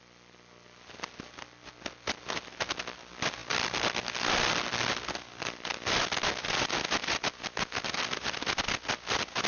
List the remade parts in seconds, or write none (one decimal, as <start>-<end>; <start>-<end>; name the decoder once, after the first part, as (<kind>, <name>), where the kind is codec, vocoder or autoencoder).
none